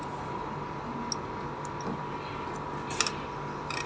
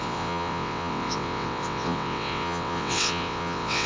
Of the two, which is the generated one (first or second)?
second